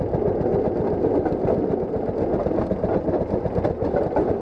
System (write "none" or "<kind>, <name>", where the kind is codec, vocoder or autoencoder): none